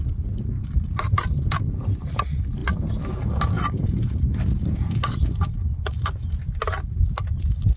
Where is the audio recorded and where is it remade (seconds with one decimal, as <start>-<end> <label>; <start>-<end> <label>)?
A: 0.0-7.8 recorded